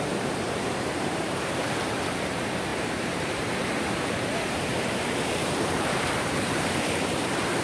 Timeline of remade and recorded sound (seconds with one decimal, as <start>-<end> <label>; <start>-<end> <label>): 0.0-7.6 remade